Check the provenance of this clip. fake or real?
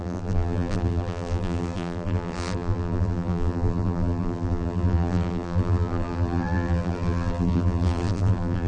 fake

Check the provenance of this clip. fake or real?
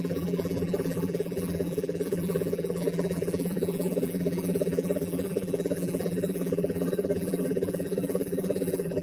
fake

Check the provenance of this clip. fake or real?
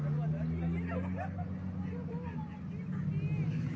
real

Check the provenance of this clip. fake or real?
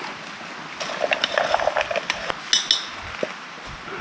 real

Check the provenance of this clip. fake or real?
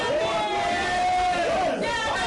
real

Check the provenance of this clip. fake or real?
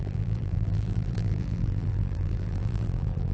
fake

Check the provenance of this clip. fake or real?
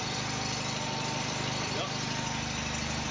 fake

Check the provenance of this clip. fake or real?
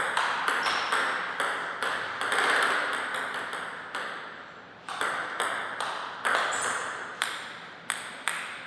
real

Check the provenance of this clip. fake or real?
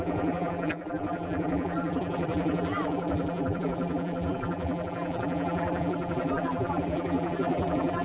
fake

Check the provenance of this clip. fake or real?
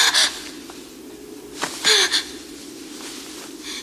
real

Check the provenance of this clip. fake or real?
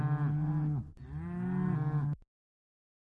real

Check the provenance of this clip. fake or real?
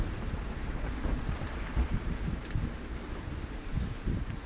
fake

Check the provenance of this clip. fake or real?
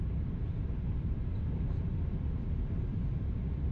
fake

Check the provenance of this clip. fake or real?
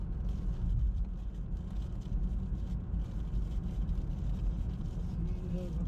real